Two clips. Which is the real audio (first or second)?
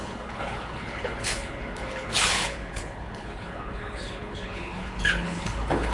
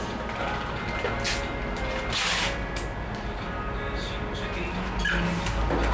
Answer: second